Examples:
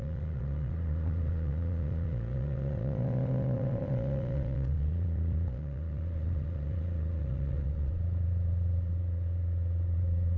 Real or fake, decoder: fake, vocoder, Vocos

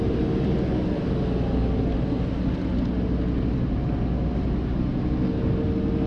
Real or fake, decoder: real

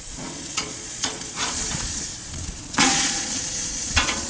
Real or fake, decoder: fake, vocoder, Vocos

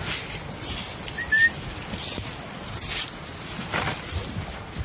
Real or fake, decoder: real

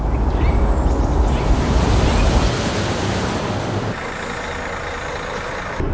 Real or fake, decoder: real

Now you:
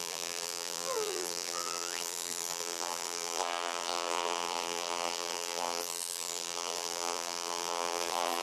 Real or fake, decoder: fake, vocoder, BigVGAN v2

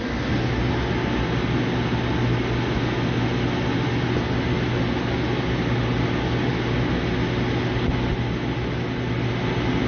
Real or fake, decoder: real